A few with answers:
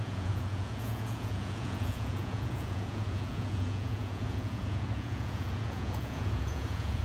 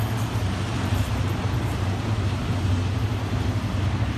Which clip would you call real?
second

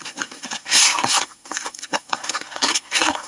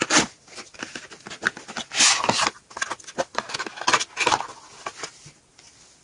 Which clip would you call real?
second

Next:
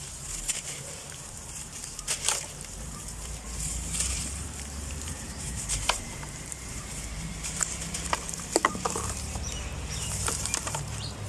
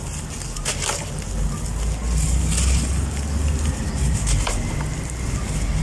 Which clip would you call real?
second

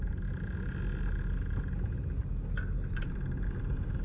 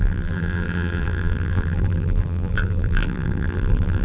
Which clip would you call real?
first